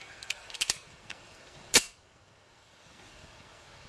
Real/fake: fake